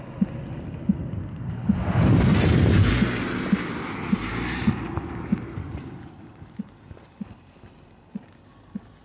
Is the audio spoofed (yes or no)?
no